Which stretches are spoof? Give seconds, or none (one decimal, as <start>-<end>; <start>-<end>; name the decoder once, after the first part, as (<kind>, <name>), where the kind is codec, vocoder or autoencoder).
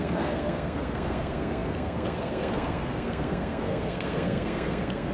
0.0-5.1 (codec, SNAC)